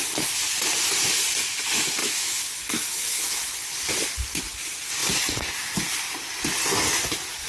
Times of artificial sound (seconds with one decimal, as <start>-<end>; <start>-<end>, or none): 2.0-3.5